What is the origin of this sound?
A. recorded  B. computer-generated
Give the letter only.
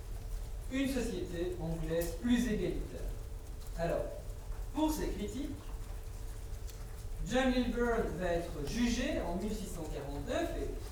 A